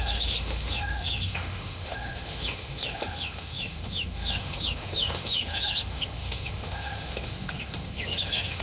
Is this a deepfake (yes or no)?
yes